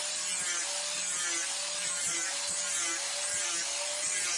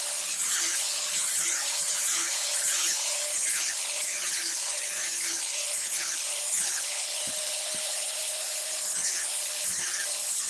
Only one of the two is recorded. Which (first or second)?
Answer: first